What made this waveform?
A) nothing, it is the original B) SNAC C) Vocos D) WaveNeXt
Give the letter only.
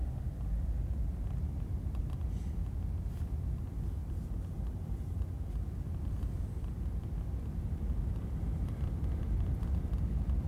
A